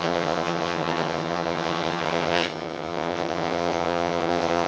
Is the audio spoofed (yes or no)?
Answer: yes